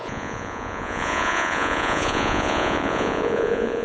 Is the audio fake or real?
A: fake